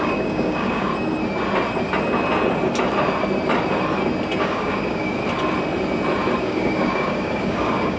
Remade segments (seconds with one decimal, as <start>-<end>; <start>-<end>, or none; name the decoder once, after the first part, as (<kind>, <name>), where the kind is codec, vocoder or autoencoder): 0.0-0.9 (codec, DAC); 4.4-5.2; 6.4-8.0

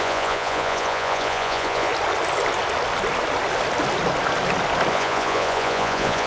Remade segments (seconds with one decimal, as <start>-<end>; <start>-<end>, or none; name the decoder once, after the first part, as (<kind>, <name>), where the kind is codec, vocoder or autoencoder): 0.0-1.9 (vocoder, Vocos); 4.9-6.3